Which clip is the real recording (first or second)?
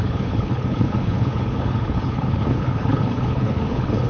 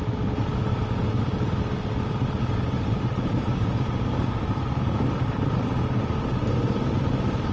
second